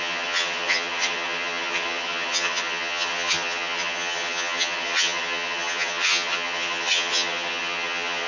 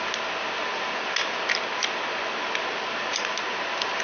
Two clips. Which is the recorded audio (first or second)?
second